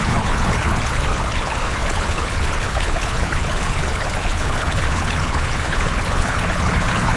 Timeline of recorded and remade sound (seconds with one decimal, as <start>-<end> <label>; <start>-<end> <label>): 0.0-7.2 remade